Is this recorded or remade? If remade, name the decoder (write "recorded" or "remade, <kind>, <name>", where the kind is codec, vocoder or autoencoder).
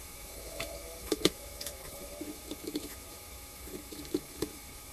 remade, autoencoder, DAC-VAE